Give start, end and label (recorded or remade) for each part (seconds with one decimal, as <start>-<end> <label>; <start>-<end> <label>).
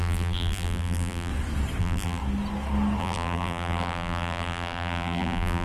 0.0-1.3 remade; 1.3-1.8 recorded; 1.8-2.2 remade; 2.2-3.0 recorded; 3.0-5.6 remade